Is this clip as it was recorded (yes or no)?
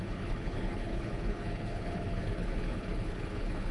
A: no